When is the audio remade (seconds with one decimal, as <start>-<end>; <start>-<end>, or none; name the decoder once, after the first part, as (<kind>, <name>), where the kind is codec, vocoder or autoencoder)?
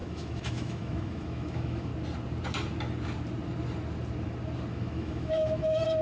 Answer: 0.0-1.9 (autoencoder, DAC-VAE); 4.7-6.0